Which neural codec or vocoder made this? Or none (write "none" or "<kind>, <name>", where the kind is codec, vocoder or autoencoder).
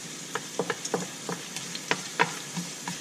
vocoder, BigVGAN v2